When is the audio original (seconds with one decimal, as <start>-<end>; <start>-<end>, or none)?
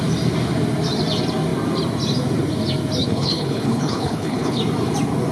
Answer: 0.0-3.0; 4.6-5.3